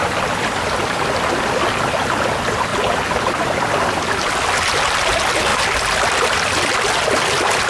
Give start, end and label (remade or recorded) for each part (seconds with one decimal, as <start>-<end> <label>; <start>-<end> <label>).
0.0-7.7 recorded